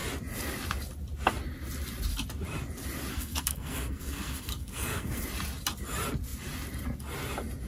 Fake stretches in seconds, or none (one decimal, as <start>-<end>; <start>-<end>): 3.1-5.2